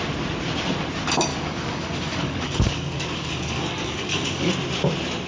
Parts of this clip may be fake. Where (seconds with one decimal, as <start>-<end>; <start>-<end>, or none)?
1.3-4.5